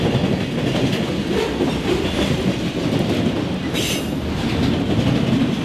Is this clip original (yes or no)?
yes